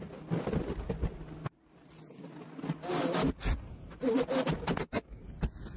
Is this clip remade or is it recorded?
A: recorded